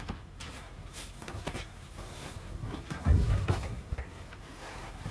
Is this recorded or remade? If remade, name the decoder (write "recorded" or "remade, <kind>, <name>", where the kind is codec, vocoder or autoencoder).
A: remade, codec, SNAC